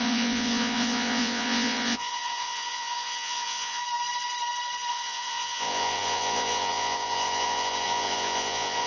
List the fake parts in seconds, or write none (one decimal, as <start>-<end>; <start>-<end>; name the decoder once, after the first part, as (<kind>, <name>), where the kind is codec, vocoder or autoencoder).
0.0-3.8 (vocoder, Vocos); 4.9-8.9